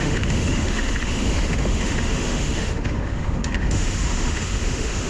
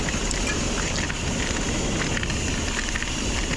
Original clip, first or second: second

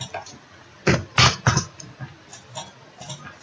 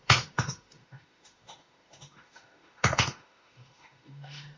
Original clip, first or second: first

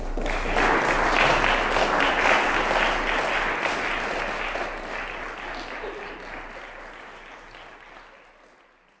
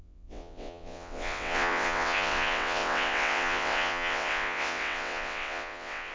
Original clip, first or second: first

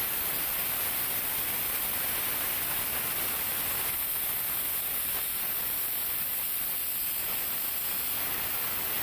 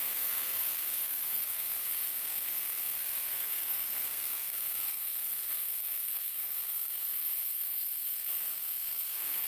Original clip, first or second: first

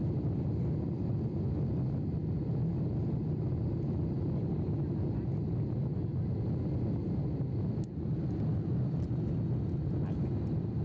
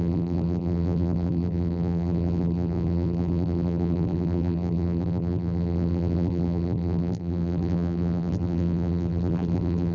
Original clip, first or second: first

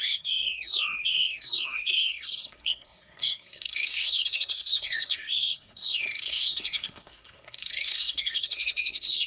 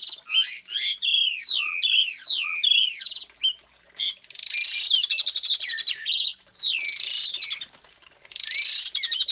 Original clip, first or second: second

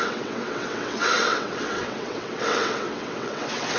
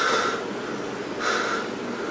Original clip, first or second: second